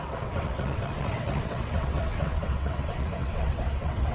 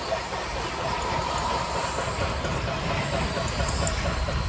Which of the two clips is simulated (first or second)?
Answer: first